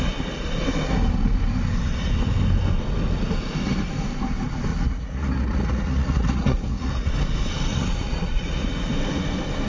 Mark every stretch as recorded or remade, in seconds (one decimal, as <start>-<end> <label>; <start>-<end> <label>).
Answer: 0.0-4.7 recorded; 4.7-7.1 remade; 7.1-7.7 recorded; 7.7-8.9 remade; 8.9-9.7 recorded